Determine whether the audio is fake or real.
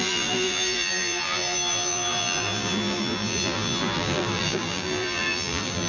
fake